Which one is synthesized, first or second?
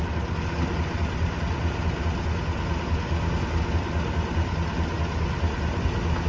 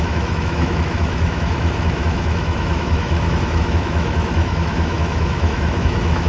second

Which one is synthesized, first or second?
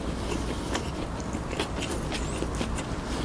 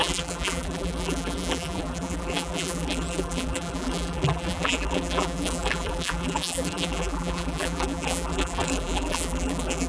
second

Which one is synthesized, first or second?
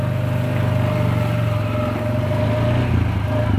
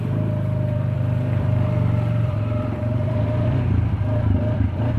second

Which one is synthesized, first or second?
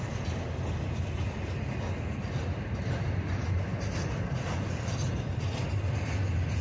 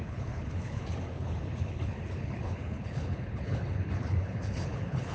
second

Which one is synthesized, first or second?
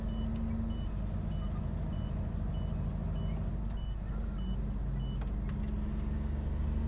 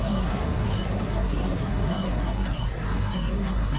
second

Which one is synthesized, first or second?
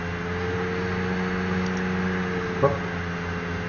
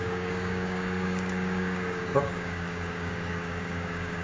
second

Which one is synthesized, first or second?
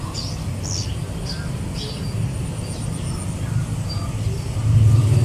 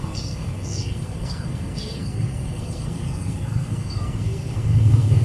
second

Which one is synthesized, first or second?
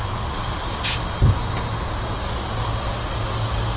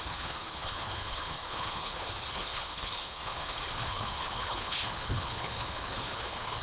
second